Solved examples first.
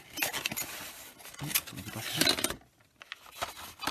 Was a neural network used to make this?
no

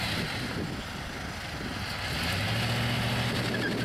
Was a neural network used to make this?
no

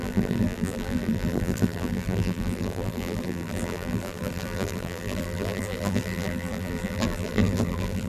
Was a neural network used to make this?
yes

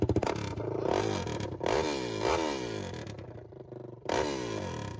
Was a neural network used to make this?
no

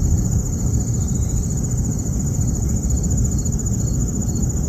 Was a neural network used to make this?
yes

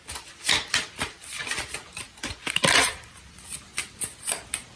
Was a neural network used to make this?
no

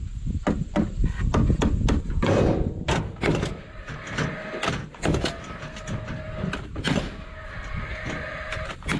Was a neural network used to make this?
no